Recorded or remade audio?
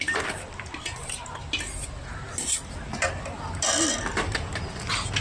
recorded